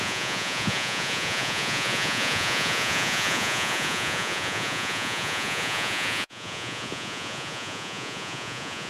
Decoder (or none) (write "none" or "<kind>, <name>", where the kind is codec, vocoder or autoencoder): vocoder, Vocos